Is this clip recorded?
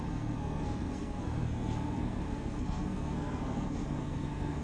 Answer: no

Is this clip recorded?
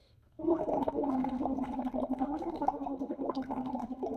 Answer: no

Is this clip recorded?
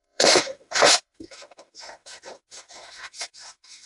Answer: no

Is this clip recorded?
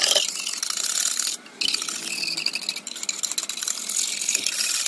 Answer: yes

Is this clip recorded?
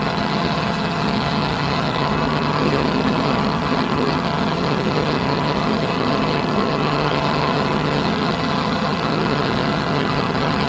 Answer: no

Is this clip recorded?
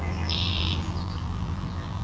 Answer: no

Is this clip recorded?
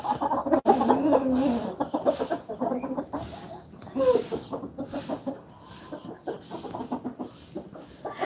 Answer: yes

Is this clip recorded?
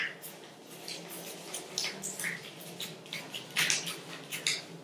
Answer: yes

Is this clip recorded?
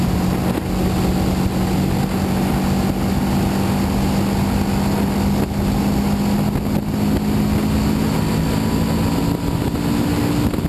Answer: yes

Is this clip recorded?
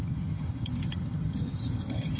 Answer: no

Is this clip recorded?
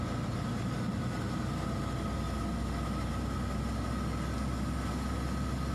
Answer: yes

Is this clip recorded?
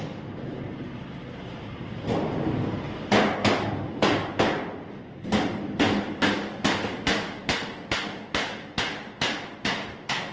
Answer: yes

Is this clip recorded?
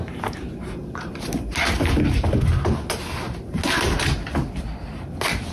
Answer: yes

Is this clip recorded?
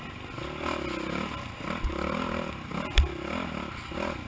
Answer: yes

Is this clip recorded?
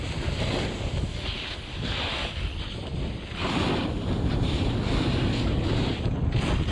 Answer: yes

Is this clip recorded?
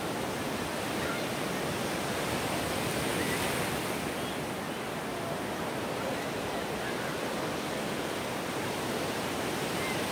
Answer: yes